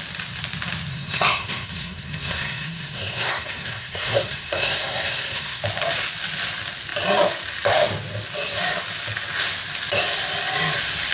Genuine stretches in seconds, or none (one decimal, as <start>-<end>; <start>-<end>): 0.0-0.9; 5.6-11.1